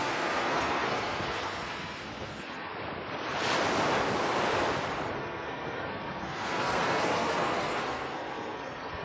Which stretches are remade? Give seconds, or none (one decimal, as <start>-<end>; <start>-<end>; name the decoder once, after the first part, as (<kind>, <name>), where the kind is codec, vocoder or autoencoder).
0.0-2.7 (codec, SNAC); 5.2-9.0